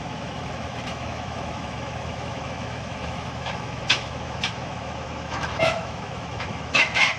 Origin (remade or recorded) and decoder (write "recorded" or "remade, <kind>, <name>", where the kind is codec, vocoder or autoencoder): remade, autoencoder, DAC-VAE